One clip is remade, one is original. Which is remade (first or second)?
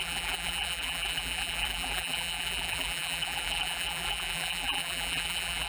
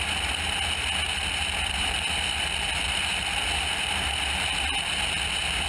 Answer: first